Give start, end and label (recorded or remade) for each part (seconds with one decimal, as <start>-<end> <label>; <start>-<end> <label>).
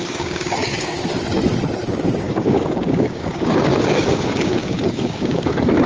0.0-1.1 remade; 1.1-1.8 recorded; 1.8-5.9 remade